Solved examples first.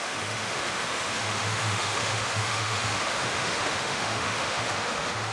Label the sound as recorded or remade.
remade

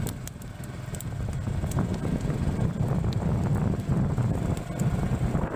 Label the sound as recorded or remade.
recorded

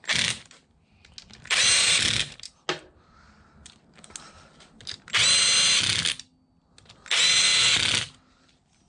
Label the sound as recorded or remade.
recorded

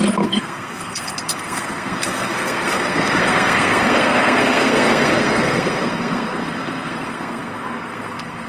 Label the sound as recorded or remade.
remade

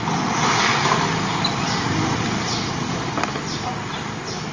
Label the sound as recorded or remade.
recorded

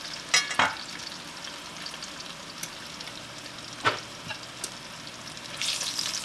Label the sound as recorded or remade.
recorded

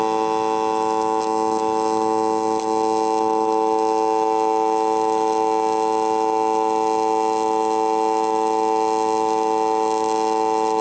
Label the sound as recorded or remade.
recorded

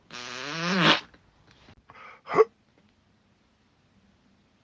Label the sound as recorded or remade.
recorded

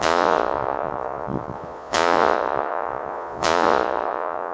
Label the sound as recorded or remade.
remade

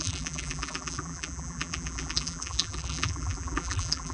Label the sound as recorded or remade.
remade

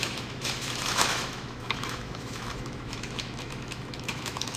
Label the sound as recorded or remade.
remade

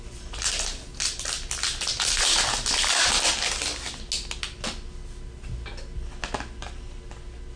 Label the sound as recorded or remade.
recorded